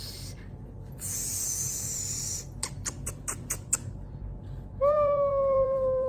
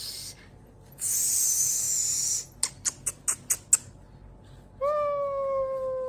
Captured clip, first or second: second